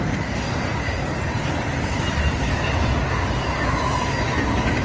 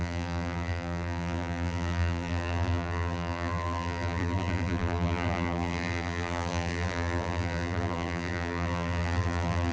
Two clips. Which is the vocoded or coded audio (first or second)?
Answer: second